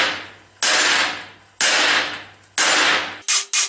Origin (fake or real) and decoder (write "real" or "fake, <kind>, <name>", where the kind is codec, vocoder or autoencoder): real